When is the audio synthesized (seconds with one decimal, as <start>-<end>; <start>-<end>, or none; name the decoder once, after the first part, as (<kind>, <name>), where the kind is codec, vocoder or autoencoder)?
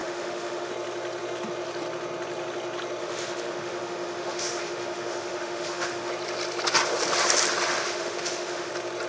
0.0-0.7 (autoencoder, DAC-VAE); 3.0-6.1; 7.8-8.7